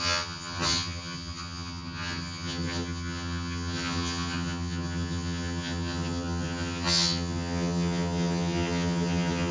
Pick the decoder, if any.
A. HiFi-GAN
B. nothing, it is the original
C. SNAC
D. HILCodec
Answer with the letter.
A